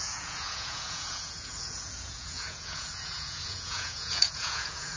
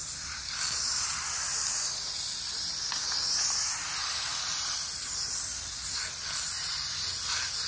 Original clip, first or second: second